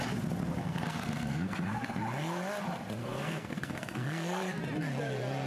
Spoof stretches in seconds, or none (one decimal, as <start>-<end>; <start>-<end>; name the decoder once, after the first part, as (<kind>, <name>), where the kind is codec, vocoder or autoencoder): 0.6-2.0 (codec, SNAC); 3.0-4.6